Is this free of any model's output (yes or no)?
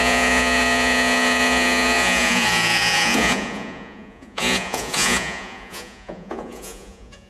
no